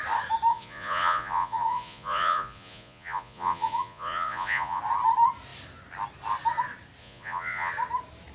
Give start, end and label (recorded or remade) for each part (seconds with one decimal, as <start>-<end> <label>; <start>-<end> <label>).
0.0-0.5 recorded; 0.5-4.8 remade; 4.8-7.0 recorded; 7.0-7.7 remade; 7.7-8.3 recorded